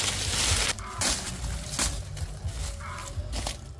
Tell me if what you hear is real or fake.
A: real